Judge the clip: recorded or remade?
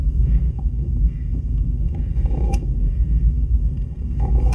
remade